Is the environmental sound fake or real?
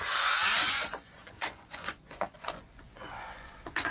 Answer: fake